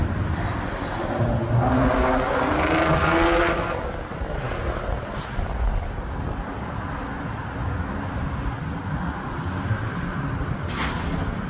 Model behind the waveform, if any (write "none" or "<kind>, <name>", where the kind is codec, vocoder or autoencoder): none